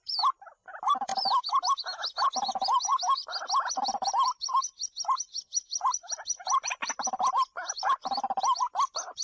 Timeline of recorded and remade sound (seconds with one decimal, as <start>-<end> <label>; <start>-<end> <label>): 0.0-9.2 remade